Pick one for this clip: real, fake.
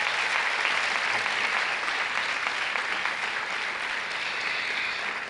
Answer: real